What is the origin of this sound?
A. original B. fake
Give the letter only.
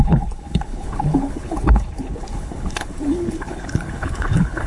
B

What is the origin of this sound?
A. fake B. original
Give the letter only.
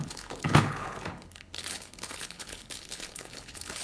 A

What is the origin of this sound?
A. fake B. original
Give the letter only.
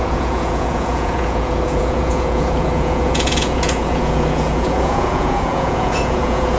A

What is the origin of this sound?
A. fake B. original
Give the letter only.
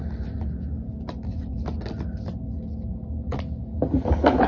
B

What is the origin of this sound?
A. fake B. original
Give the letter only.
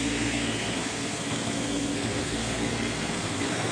A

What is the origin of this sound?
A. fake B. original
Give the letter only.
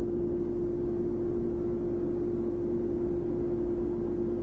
B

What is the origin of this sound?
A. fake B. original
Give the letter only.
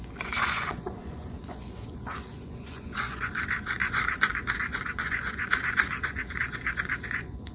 A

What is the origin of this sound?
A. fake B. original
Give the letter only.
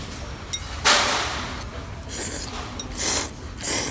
B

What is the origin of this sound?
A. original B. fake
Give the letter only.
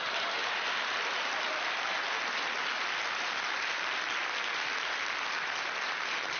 A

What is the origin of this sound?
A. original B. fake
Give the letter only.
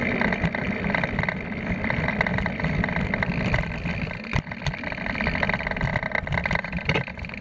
A